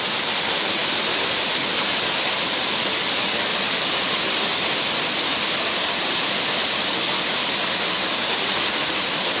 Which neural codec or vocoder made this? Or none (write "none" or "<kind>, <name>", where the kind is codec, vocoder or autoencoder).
none